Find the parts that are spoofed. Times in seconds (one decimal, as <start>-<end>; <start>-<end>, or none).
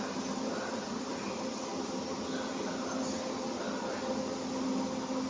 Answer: none